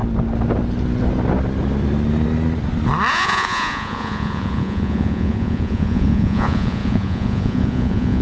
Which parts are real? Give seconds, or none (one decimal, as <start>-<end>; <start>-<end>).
0.0-3.1